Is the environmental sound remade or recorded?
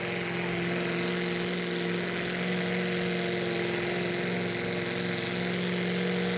recorded